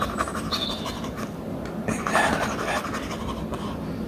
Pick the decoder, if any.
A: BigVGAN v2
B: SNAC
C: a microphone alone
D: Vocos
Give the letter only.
C